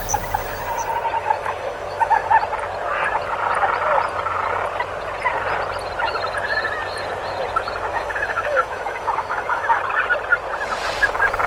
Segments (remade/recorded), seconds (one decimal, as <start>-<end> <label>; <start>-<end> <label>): 0.0-1.2 recorded; 1.2-2.3 remade; 2.3-7.9 recorded; 7.9-9.8 remade; 9.8-11.5 recorded